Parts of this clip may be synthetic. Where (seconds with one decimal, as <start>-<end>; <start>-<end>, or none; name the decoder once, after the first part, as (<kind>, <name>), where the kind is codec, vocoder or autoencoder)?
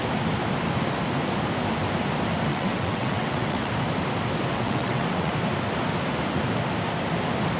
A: 2.5-3.7 (vocoder, WaveNeXt); 4.5-5.3